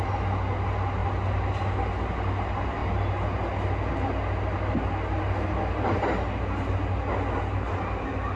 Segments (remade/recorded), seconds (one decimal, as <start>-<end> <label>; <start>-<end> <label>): 0.0-8.4 recorded